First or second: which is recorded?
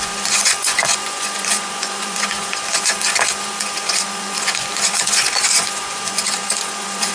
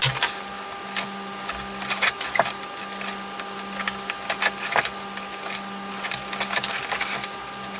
second